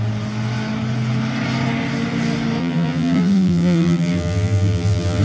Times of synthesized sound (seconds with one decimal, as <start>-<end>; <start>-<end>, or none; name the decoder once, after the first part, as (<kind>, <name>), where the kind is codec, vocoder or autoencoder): 2.6-5.2 (vocoder, BigVGAN v2)